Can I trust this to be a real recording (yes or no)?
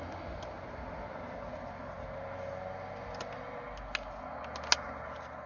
yes